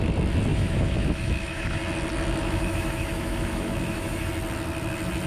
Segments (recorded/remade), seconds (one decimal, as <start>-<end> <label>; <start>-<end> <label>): 0.0-0.5 recorded; 0.5-1.8 remade; 1.8-2.4 recorded; 2.4-4.3 remade; 4.3-5.3 recorded